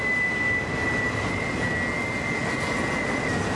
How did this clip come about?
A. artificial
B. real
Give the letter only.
B